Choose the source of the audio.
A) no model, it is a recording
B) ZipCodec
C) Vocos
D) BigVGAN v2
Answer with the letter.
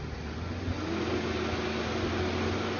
A